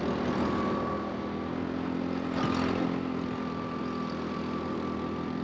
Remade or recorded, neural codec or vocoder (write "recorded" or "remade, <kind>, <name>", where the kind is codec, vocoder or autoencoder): recorded